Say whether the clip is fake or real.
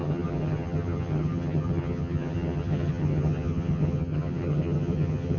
fake